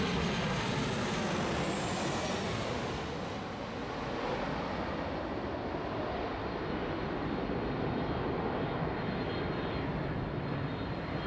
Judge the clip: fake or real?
real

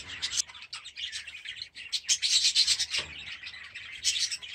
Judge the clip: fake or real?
real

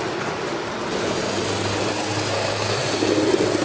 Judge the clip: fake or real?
real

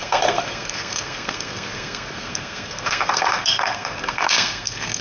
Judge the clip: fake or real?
fake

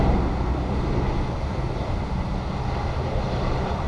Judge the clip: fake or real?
real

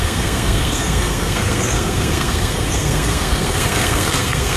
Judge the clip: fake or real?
fake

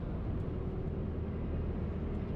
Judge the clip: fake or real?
real